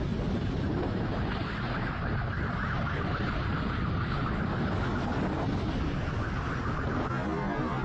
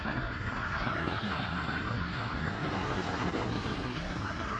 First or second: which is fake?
second